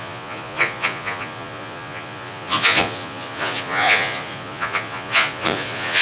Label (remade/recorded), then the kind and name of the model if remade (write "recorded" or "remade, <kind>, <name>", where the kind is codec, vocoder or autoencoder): remade, vocoder, Vocos